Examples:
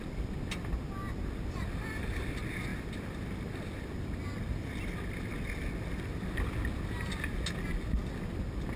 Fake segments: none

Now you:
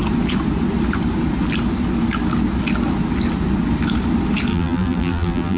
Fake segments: 4.5-5.6 (vocoder, BigVGAN v2)

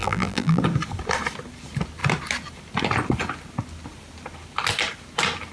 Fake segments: 0.0-0.6 (vocoder, BigVGAN v2)

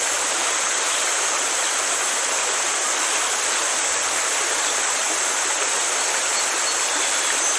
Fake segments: none